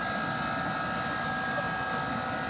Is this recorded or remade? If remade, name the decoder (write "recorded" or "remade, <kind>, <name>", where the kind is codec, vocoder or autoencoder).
recorded